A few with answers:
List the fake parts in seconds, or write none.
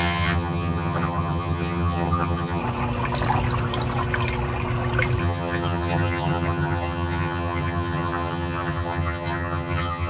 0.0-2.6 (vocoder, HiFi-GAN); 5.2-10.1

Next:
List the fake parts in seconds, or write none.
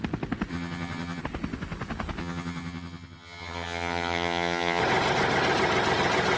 0.5-1.2 (vocoder, HiFi-GAN); 2.2-4.8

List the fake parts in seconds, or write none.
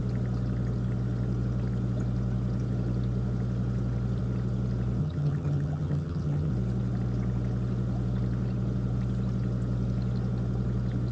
5.0-6.5 (vocoder, HiFi-GAN)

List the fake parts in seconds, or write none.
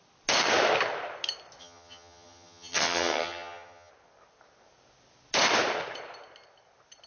1.6-3.9 (vocoder, HiFi-GAN)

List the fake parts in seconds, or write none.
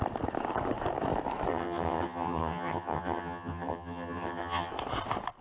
1.5-4.7 (vocoder, HiFi-GAN)